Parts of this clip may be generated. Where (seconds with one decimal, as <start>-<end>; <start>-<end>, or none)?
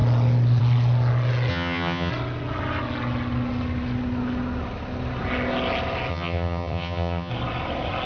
1.5-2.1; 6.1-7.3